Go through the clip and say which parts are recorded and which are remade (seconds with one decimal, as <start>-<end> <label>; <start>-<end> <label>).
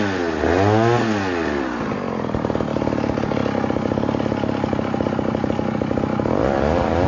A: 0.0-7.1 recorded